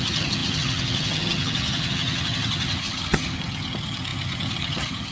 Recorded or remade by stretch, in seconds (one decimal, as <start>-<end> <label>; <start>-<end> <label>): 0.0-5.1 remade

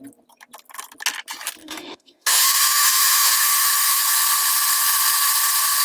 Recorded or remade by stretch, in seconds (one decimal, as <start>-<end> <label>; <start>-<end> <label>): 0.0-1.6 recorded; 1.6-4.0 remade; 4.0-5.8 recorded

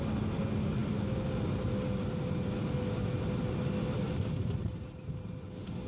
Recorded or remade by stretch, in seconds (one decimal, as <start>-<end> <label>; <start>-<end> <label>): 0.0-5.9 recorded

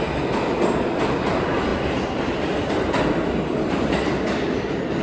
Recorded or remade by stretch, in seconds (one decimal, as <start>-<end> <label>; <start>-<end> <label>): 0.0-5.0 recorded

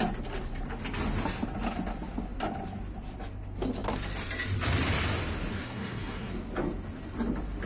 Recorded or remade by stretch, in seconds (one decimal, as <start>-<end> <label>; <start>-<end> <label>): 0.0-5.5 recorded; 5.5-6.3 remade; 6.3-7.7 recorded

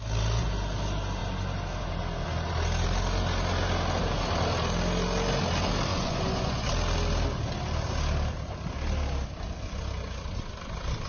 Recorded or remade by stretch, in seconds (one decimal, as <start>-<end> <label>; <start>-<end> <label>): 0.0-5.9 recorded; 5.9-6.7 remade; 6.7-11.1 recorded

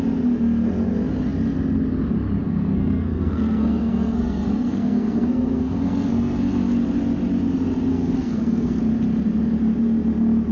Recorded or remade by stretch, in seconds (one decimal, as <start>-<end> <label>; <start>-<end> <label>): 0.0-2.4 recorded; 2.4-6.5 remade; 6.5-7.9 recorded; 7.9-8.8 remade; 8.8-10.5 recorded

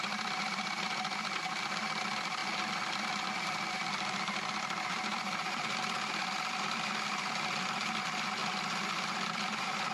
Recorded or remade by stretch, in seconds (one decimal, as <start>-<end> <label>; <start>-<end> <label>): 0.0-2.4 recorded; 2.4-7.1 remade; 7.1-8.4 recorded; 8.4-9.9 remade